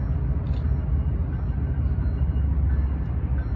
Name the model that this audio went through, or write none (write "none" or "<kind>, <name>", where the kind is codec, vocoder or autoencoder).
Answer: none